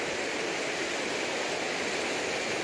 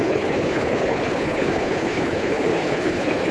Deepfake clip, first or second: second